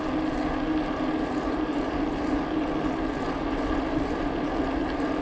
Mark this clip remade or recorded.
recorded